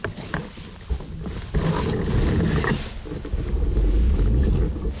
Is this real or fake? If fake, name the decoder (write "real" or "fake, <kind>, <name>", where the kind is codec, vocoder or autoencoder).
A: real